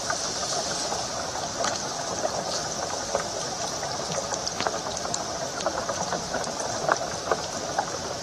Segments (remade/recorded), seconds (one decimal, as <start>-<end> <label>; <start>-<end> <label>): 0.0-1.5 recorded; 1.5-2.1 remade; 2.1-5.3 recorded; 5.3-6.9 remade; 6.9-8.2 recorded